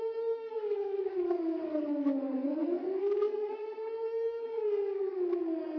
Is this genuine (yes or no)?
no